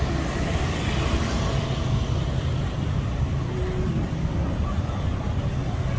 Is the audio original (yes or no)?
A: yes